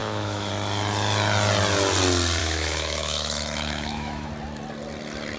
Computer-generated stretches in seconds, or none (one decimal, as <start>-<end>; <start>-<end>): 0.0-0.5; 2.4-4.3